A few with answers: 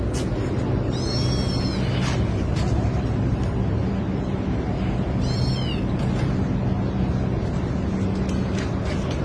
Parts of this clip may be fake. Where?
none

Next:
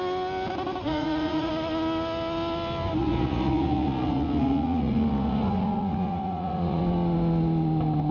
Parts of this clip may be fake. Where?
0.8-1.5; 3.0-6.8

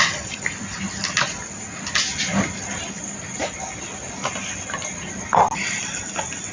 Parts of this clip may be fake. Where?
none